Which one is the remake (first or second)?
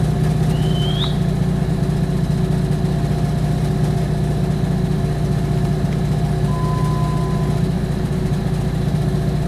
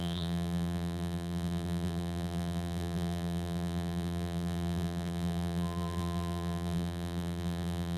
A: second